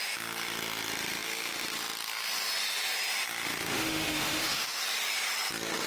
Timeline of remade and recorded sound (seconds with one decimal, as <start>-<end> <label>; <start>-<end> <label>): 0.0-3.5 recorded; 3.5-4.8 remade; 4.8-5.9 recorded